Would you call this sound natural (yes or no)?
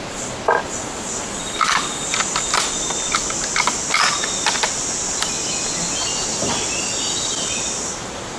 yes